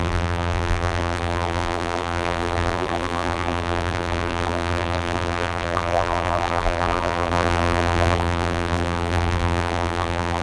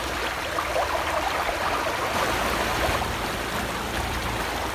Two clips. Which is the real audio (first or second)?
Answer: second